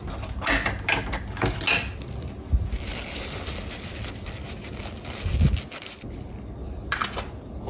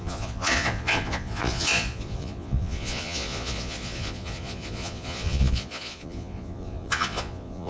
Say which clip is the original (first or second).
first